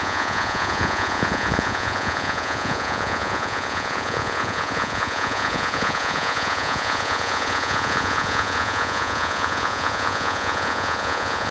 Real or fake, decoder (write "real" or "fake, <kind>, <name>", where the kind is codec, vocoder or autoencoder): fake, vocoder, Vocos